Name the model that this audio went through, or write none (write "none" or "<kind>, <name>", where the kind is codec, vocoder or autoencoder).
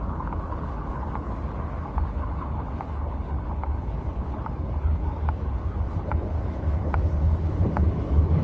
codec, HILCodec